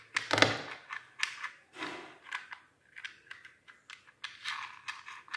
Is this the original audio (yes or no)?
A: yes